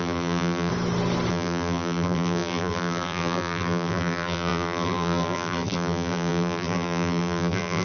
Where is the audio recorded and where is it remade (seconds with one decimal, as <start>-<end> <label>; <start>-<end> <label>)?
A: 0.0-0.7 remade; 0.7-1.3 recorded; 1.3-7.8 remade